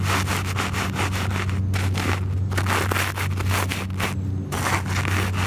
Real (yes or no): yes